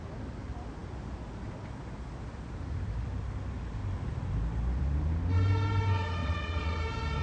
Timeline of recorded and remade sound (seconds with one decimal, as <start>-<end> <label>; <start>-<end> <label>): 0.0-6.2 recorded; 6.2-6.8 remade; 6.8-7.2 recorded